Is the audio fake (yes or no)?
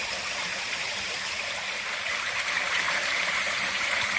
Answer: yes